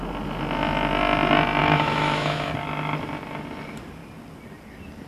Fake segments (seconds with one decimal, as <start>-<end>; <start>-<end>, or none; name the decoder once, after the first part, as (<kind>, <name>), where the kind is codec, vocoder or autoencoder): 1.6-2.5 (autoencoder, DAC-VAE)